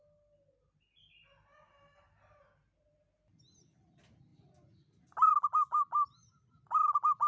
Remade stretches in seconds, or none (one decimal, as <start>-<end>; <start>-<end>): none